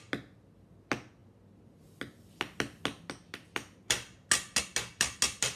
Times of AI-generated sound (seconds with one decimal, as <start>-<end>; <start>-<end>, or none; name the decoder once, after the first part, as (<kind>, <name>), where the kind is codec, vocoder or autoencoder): none